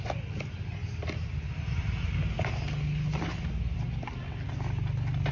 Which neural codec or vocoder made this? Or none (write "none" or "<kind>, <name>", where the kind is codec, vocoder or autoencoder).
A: none